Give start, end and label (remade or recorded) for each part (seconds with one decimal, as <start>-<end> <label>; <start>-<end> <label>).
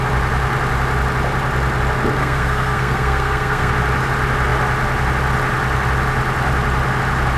0.0-2.2 recorded; 2.2-3.7 remade; 3.7-7.4 recorded